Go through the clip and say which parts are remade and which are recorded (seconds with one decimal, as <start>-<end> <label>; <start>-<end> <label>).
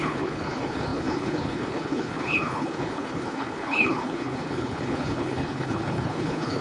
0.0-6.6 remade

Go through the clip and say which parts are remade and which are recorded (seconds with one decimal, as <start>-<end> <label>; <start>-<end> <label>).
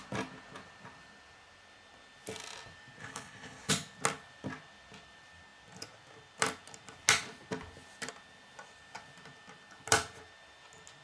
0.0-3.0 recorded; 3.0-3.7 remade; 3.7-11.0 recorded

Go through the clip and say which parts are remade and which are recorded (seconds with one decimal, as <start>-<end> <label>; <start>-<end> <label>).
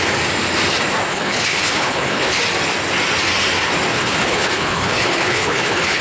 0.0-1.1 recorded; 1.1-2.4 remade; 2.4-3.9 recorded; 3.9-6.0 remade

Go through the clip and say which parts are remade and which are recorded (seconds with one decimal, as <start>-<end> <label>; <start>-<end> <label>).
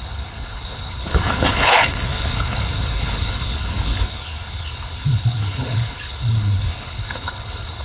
0.0-7.8 remade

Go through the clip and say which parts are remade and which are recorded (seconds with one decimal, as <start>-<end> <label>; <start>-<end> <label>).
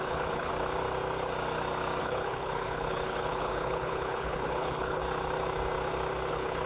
0.0-0.5 remade; 0.5-2.0 recorded; 2.0-5.0 remade; 5.0-6.3 recorded; 6.3-6.7 remade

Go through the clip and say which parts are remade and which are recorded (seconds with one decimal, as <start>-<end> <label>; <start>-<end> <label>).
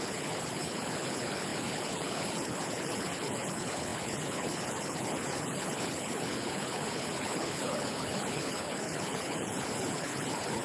0.0-10.6 remade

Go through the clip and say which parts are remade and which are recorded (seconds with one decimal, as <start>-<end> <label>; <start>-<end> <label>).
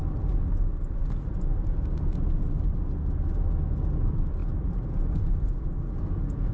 0.0-6.5 recorded